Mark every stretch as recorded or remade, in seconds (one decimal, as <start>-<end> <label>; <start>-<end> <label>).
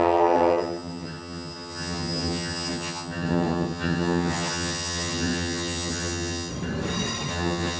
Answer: 0.0-6.5 remade; 6.5-7.3 recorded; 7.3-7.8 remade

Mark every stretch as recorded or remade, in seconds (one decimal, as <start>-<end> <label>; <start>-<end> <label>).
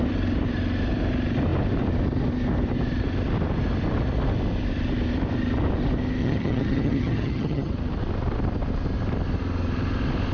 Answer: 0.0-6.2 recorded; 6.2-7.7 remade; 7.7-10.3 recorded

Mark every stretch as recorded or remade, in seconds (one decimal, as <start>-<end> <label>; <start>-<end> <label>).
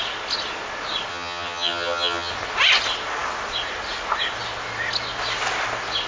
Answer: 0.0-1.1 recorded; 1.1-2.3 remade; 2.3-6.1 recorded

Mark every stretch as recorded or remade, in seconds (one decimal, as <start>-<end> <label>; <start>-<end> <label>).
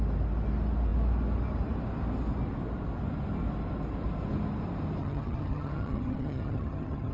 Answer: 0.0-5.0 recorded; 5.0-7.1 remade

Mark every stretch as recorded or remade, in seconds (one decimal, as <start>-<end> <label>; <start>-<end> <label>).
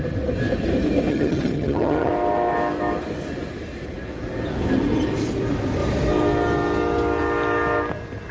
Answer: 0.0-1.1 recorded; 1.1-2.1 remade; 2.1-8.3 recorded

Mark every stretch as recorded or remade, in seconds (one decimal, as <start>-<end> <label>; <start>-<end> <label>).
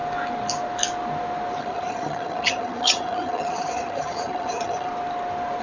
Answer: 0.0-1.6 recorded; 1.6-4.9 remade; 4.9-5.6 recorded